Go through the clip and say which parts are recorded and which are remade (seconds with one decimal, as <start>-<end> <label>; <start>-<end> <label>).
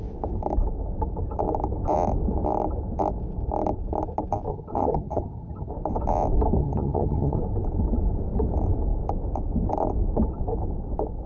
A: 0.0-4.5 recorded; 4.5-5.7 remade; 5.7-6.6 recorded; 6.6-7.4 remade; 7.4-11.3 recorded